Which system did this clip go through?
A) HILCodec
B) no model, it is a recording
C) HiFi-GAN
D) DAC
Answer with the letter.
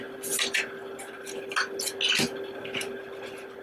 B